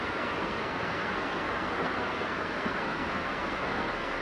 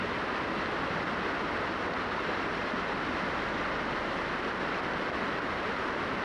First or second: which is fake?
first